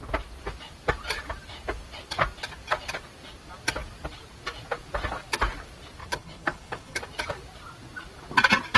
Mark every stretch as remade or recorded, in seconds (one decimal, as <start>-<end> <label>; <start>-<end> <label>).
0.0-6.0 recorded; 6.0-7.0 remade; 7.0-8.8 recorded